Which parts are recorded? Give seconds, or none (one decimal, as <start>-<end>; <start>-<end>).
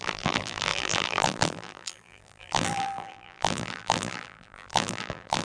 none